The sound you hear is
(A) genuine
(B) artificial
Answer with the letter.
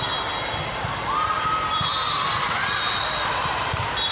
A